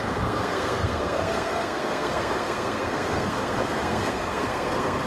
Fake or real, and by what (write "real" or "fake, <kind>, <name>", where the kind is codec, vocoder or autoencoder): fake, codec, SNAC